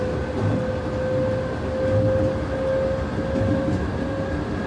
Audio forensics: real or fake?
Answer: real